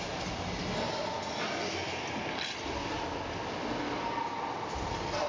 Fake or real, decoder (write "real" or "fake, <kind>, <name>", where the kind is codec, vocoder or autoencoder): real